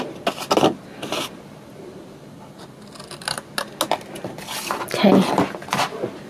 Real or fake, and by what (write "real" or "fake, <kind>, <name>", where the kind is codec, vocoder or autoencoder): real